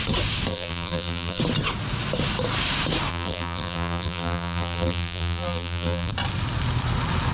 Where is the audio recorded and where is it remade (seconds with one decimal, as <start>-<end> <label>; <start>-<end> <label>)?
0.0-0.5 recorded; 0.5-1.4 remade; 1.4-3.1 recorded; 3.1-6.1 remade; 6.1-7.3 recorded